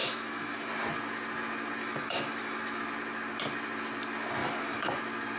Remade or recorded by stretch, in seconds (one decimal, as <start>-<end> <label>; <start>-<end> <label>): 0.0-0.7 remade; 0.7-1.8 recorded; 1.8-2.8 remade; 2.8-4.4 recorded; 4.4-5.0 remade; 5.0-5.4 recorded